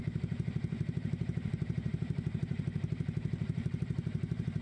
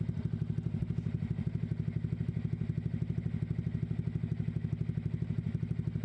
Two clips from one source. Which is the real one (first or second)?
second